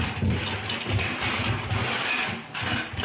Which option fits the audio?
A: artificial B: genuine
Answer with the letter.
B